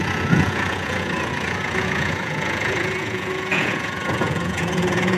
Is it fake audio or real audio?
fake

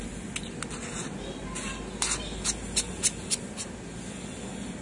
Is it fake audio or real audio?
real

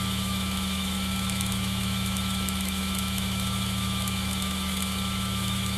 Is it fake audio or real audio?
fake